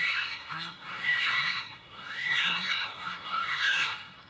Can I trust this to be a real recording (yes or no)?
no